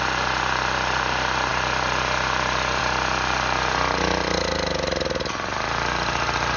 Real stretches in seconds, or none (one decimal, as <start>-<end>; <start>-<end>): 0.0-6.6